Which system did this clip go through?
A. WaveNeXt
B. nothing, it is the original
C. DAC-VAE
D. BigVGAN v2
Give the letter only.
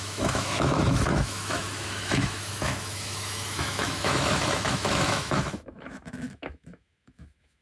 C